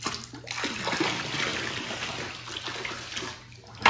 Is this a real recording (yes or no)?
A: yes